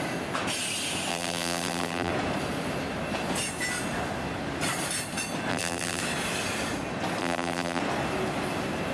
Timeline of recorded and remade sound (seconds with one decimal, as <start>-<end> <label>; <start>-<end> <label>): 0.0-1.1 recorded; 1.1-2.1 remade; 2.1-5.5 recorded; 5.5-6.0 remade; 6.0-7.2 recorded; 7.2-7.8 remade; 7.8-8.9 recorded